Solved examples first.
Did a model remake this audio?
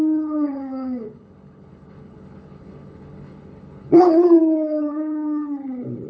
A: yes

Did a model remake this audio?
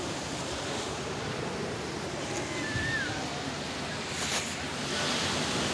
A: no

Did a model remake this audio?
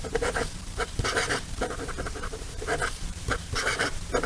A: yes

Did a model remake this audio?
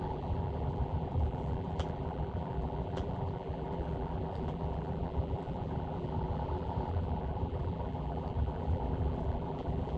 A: yes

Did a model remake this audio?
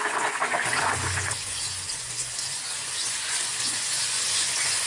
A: yes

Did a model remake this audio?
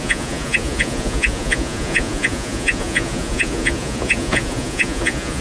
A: yes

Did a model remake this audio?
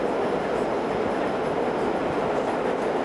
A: no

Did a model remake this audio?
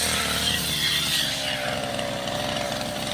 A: yes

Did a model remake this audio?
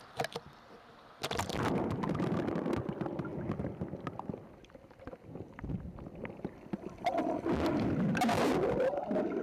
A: no